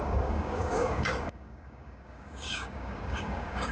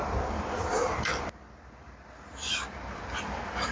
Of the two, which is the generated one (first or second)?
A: first